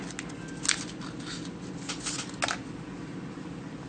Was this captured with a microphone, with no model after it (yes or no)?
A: yes